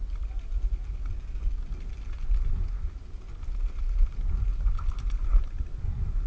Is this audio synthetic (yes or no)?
no